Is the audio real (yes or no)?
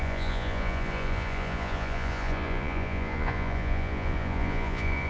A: no